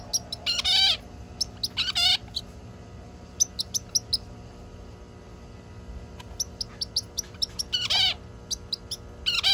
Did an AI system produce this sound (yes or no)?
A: no